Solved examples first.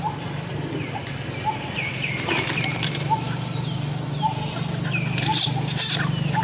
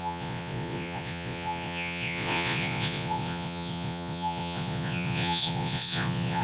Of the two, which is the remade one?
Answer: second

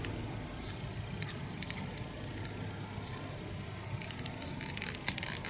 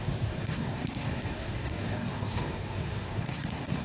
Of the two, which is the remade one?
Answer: second